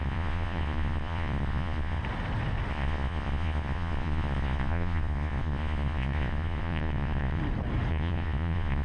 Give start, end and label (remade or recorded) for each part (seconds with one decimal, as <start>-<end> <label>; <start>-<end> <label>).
0.0-2.0 remade; 2.0-2.7 recorded; 2.7-7.4 remade; 7.4-7.9 recorded; 7.9-8.8 remade